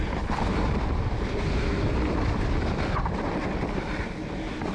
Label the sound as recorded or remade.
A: recorded